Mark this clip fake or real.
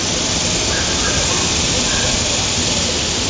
real